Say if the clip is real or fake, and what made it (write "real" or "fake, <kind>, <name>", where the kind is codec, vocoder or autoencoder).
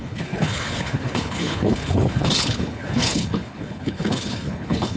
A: fake, codec, HILCodec